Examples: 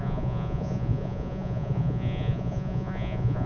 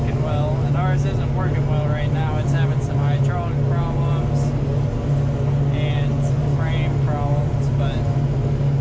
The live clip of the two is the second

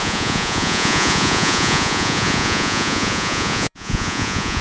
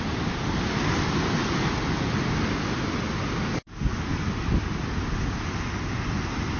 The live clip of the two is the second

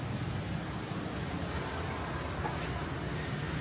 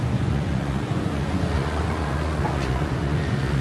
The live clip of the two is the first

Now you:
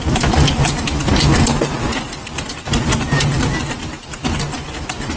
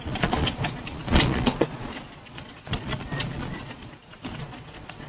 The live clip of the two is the first